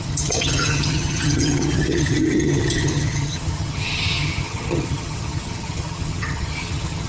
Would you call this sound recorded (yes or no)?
no